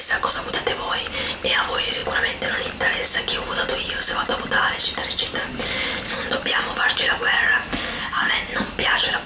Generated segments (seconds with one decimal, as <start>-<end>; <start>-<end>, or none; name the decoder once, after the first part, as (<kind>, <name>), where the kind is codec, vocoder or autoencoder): 7.7-8.3 (codec, SNAC)